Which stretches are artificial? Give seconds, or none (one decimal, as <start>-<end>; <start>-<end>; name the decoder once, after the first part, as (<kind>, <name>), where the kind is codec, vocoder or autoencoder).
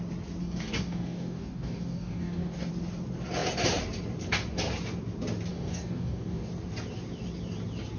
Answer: 0.4-2.7 (codec, DAC); 5.5-6.5